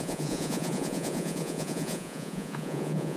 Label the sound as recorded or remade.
remade